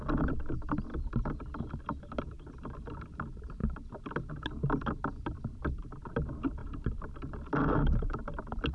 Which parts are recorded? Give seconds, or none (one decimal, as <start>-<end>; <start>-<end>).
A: 0.0-8.7